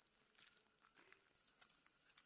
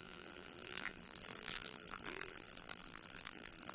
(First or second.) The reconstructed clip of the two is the second